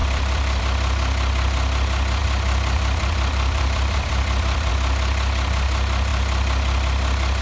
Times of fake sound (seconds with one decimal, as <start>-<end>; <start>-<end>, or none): 0.0-0.6; 2.2-4.7